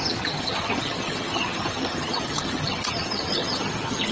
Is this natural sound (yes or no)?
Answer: no